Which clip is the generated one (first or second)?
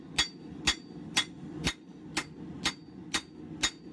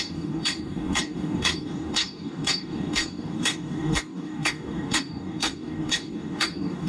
second